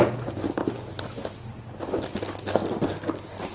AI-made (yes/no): no